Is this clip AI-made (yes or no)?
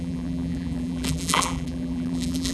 yes